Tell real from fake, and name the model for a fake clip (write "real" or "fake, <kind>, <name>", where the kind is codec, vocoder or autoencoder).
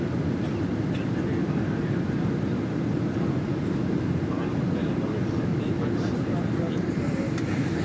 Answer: real